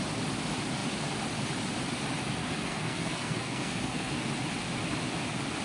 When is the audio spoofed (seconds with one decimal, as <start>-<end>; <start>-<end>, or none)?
2.4-4.3